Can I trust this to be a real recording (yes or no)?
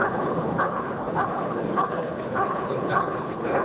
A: no